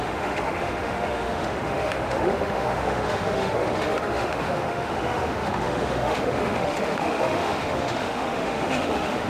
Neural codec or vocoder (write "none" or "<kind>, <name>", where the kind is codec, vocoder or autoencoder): autoencoder, DAC-VAE